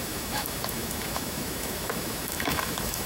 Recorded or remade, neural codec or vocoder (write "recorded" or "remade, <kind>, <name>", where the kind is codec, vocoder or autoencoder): remade, autoencoder, DAC-VAE